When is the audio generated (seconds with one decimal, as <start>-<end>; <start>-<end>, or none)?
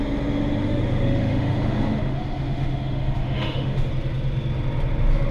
0.7-3.9